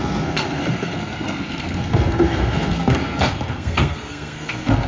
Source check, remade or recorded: remade